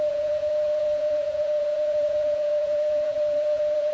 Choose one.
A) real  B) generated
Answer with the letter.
B